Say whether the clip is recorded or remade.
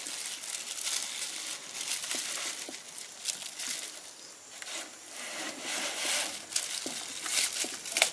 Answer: recorded